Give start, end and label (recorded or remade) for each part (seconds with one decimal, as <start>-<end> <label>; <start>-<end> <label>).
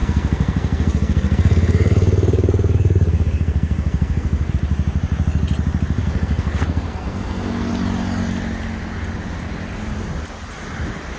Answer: 0.0-4.5 remade; 4.5-6.0 recorded; 6.0-7.7 remade; 7.7-11.2 recorded